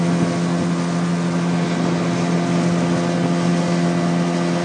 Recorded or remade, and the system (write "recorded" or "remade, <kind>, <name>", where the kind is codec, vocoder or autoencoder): recorded